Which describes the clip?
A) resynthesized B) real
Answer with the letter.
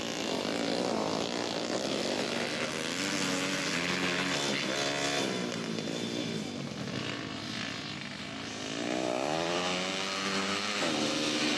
B